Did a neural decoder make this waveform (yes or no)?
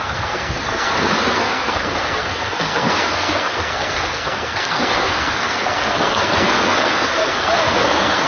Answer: yes